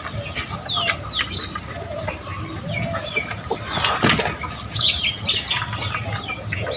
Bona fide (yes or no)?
yes